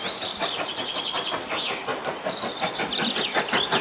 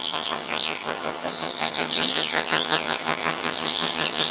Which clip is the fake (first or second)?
second